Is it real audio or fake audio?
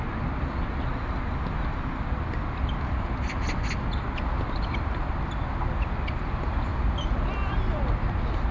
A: real